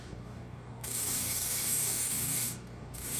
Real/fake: fake